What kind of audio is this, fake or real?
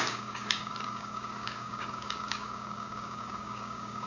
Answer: fake